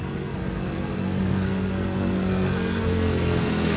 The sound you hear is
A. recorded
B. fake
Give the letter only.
B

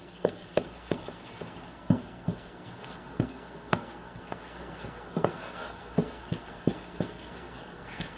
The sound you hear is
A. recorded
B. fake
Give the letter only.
B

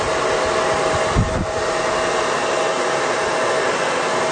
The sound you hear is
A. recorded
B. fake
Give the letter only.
A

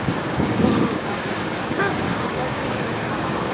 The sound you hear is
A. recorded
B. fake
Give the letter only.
B